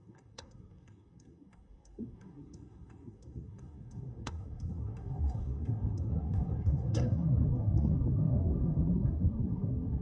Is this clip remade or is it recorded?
remade